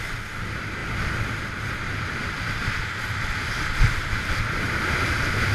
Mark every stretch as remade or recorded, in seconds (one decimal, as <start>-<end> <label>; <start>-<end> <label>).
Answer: 0.0-5.5 recorded